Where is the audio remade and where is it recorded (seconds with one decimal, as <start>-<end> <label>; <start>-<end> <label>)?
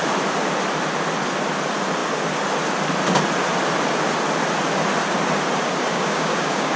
0.0-5.9 recorded; 5.9-6.8 remade